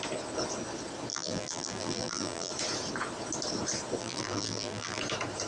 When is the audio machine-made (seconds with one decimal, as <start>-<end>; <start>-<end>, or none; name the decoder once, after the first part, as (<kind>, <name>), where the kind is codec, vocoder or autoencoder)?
1.1-2.5 (vocoder, BigVGAN v2); 4.0-5.0